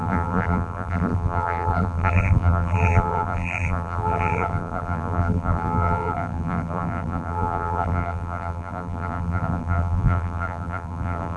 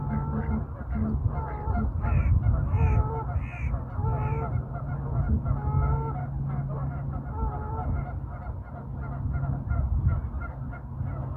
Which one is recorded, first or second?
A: second